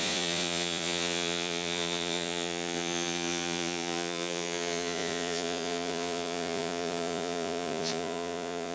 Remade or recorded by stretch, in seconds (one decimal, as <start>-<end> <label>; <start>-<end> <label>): 0.0-8.7 remade